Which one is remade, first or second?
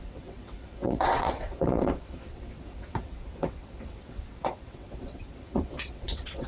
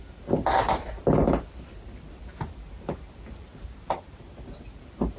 first